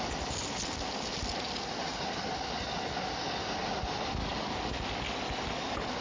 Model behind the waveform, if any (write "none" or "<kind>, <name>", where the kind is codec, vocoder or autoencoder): none